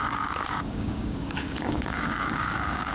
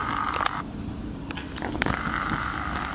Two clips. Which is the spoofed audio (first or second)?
first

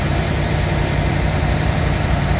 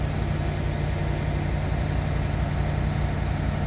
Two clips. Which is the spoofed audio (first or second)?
first